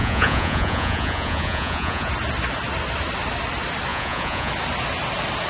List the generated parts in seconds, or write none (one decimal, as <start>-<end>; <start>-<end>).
0.0-2.1; 3.9-4.5